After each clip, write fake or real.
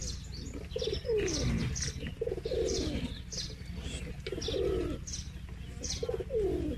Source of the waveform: real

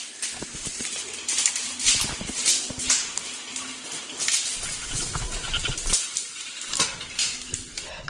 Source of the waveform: real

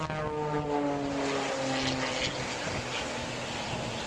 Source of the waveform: real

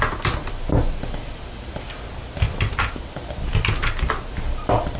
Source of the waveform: real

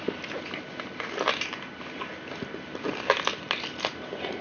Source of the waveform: real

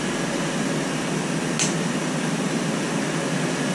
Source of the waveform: real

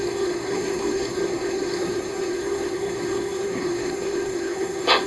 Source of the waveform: fake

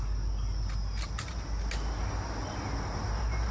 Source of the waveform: real